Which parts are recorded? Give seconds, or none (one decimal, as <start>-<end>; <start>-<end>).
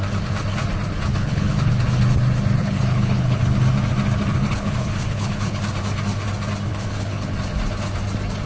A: 0.0-1.1; 1.7-2.6; 3.4-4.4; 5.6-6.7; 7.3-8.5